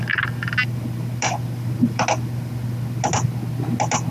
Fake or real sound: real